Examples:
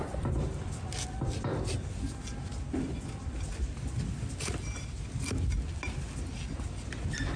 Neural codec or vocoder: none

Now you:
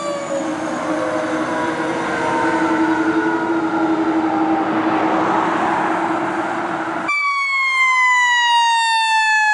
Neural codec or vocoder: none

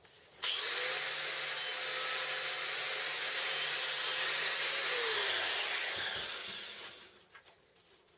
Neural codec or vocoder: none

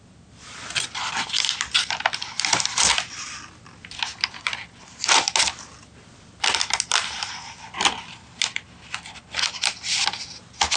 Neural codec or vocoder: none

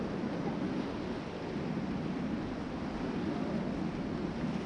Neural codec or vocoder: none